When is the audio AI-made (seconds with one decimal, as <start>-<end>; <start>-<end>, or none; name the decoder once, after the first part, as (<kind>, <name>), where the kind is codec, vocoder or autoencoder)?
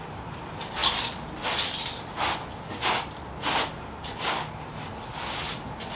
none